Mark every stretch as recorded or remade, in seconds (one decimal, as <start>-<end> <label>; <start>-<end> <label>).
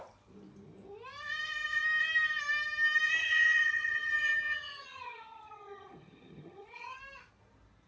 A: 0.0-3.2 recorded; 3.2-7.0 remade; 7.0-7.9 recorded